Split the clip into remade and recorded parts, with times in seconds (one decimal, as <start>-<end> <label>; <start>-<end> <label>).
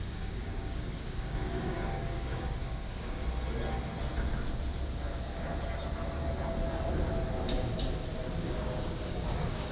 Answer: 0.0-3.2 remade; 3.2-5.1 recorded; 5.1-5.5 remade; 5.5-8.4 recorded; 8.4-9.7 remade